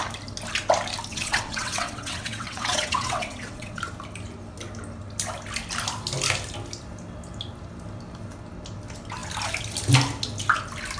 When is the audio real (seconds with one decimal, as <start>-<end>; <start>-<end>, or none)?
0.0-1.1; 3.8-11.0